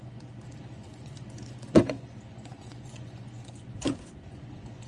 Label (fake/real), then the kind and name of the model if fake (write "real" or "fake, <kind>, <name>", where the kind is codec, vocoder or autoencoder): fake, vocoder, Vocos